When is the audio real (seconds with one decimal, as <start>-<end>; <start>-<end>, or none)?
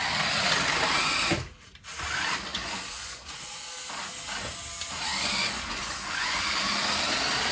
0.0-2.5; 3.7-5.1; 6.6-7.5